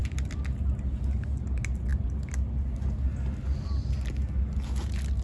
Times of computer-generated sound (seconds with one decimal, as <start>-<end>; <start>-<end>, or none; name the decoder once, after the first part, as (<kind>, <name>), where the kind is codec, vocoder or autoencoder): none